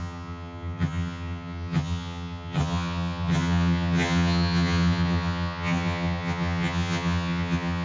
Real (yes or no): no